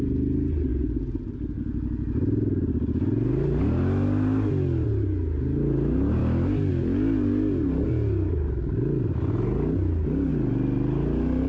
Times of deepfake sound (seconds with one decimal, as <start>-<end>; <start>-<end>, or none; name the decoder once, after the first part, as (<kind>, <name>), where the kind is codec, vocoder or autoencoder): none